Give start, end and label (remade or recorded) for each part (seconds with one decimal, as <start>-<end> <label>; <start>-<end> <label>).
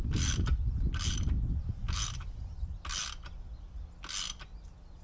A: 0.0-5.0 recorded